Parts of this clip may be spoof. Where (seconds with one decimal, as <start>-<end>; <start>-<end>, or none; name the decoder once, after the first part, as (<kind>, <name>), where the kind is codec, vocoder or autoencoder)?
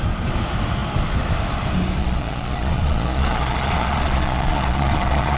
2.0-5.4 (vocoder, Vocos)